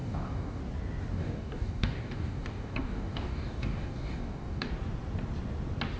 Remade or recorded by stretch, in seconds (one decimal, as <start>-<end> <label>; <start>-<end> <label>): 0.0-0.6 remade; 0.6-1.1 recorded; 1.1-4.7 remade; 4.7-6.0 recorded